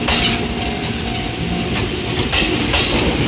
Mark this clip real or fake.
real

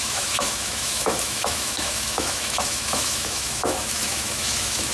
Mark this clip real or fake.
fake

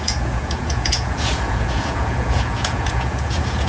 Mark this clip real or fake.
fake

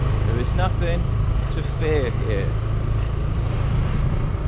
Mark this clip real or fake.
real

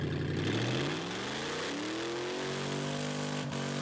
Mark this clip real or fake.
real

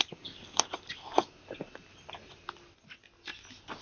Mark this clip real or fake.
real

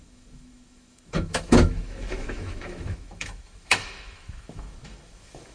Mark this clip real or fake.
fake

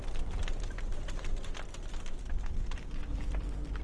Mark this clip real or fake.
real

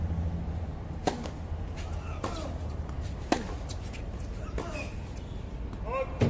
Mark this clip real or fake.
real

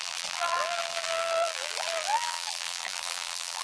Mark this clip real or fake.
fake